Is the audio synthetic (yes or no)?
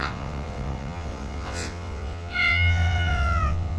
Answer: yes